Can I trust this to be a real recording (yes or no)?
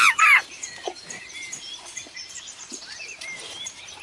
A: no